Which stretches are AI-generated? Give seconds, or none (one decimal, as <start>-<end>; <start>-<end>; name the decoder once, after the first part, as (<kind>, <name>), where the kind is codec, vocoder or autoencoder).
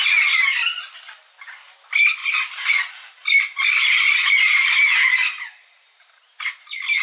2.2-6.4 (vocoder, BigVGAN v2)